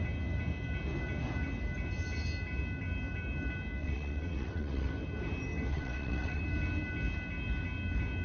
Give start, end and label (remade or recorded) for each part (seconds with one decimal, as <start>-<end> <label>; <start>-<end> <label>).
0.0-3.8 recorded; 3.8-4.9 remade; 4.9-5.7 recorded; 5.7-6.4 remade; 6.4-8.2 recorded